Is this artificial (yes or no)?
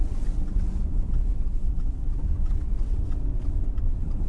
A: yes